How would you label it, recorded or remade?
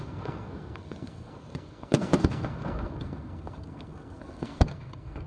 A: remade